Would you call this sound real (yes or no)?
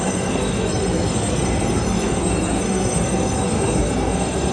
no